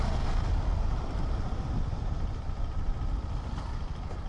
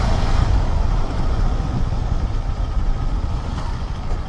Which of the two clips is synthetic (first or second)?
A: second